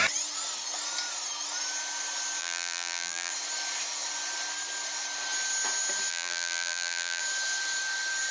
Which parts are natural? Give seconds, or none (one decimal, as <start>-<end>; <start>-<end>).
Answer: 0.0-2.4; 3.3-6.1; 7.2-8.3